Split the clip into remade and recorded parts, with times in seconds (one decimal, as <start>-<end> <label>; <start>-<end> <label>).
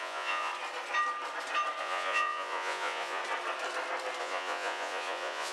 0.0-0.5 remade; 0.5-1.8 recorded; 1.8-3.2 remade; 3.2-4.2 recorded; 4.2-5.5 remade